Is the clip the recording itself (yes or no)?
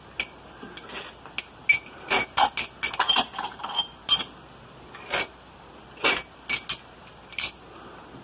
yes